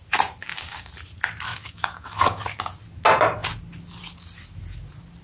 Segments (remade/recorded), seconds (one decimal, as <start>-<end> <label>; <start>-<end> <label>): 0.0-0.4 recorded; 0.4-0.9 remade; 0.9-1.5 recorded; 1.5-2.7 remade; 2.7-5.2 recorded

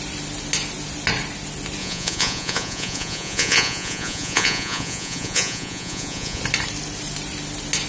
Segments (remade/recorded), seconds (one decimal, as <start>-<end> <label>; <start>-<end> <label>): 0.0-1.8 recorded; 1.8-6.4 remade; 6.4-7.9 recorded

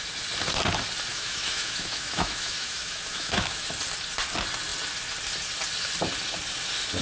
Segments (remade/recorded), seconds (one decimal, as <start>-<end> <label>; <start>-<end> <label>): 0.0-1.1 recorded; 1.1-3.7 remade; 3.7-7.0 recorded

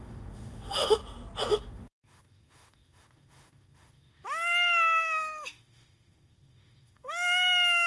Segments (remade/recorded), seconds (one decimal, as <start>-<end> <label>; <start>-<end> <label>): 0.0-1.0 remade; 1.0-1.6 recorded; 1.6-7.9 remade